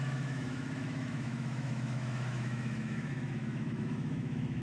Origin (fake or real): fake